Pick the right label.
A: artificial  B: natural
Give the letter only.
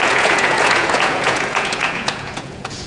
A